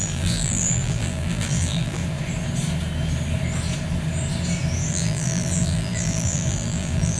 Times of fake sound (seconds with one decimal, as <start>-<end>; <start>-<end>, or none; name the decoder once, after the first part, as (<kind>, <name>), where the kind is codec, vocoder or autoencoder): 0.0-2.0 (vocoder, BigVGAN v2); 4.9-7.2